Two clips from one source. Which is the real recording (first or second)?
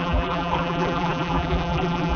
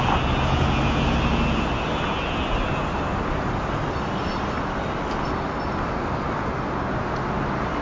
second